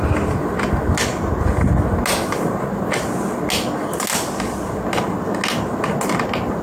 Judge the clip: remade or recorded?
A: recorded